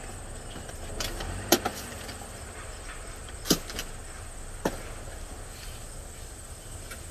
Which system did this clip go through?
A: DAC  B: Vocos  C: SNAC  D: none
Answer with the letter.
D